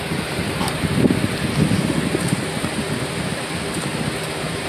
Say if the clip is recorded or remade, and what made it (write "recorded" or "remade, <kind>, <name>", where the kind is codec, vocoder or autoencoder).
recorded